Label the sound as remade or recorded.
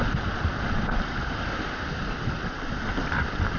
recorded